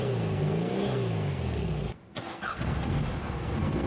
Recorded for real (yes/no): no